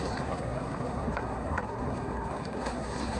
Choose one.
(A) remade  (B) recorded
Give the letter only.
A